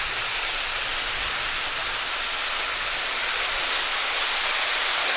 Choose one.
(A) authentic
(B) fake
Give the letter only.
A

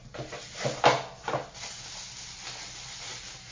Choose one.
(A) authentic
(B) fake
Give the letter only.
A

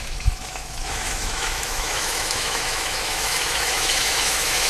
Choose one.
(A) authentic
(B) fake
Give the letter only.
B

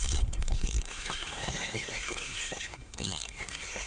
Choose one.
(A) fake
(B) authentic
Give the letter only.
A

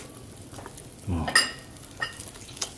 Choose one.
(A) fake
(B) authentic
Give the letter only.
B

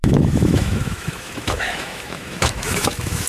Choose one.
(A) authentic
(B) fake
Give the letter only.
B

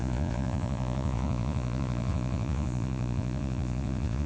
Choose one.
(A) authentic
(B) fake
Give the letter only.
B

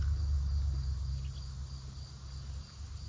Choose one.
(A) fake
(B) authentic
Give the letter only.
B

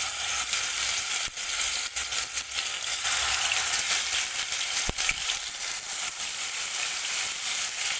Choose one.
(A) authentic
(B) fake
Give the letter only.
A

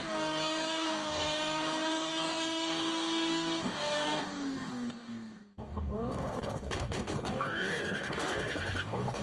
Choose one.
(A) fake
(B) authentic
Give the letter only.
A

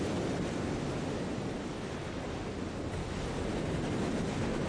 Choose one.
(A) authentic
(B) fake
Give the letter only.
A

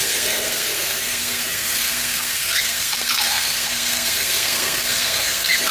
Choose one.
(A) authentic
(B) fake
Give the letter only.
B